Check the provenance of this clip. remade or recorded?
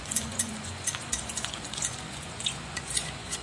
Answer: remade